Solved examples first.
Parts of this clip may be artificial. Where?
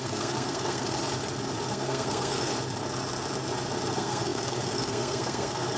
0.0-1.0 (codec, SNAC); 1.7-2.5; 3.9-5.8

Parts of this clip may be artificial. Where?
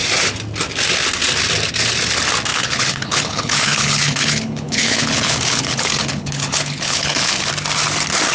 2.5-7.5 (codec, HILCodec)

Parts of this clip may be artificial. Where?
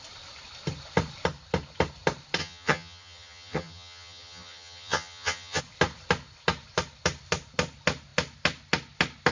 2.4-5.6 (vocoder, HiFi-GAN)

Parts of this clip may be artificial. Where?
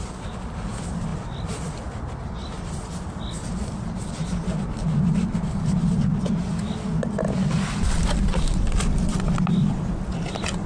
1.1-2.7 (vocoder, BigVGAN v2)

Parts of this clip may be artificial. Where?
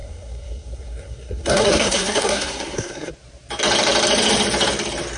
0.0-3.1 (codec, SNAC)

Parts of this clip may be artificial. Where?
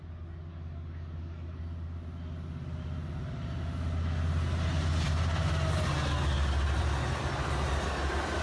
0.5-1.6 (codec, DAC)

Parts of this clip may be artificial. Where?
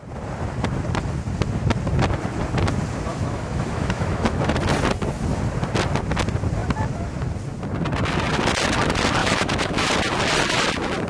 3.1-4.5 (autoencoder, DAC-VAE); 9.2-9.9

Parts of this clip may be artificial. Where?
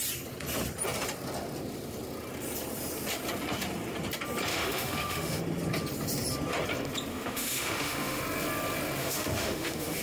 4.5-5.4 (autoencoder, DAC-VAE); 7.1-8.2; 9.0-10.0